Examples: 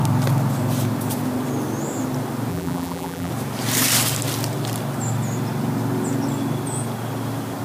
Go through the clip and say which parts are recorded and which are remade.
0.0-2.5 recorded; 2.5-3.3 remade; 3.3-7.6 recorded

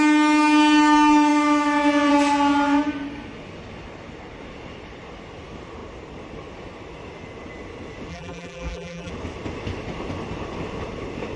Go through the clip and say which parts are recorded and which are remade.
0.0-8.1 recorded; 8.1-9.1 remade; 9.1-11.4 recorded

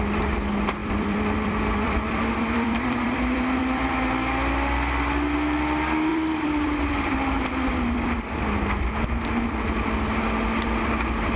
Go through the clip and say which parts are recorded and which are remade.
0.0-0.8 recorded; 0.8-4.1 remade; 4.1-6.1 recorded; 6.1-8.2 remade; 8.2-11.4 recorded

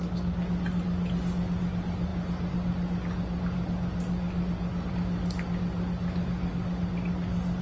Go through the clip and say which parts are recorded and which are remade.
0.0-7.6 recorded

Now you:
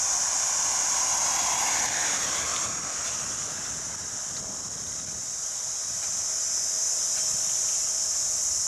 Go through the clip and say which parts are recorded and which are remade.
0.0-8.7 recorded

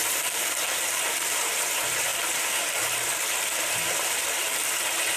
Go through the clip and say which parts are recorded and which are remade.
0.0-5.2 remade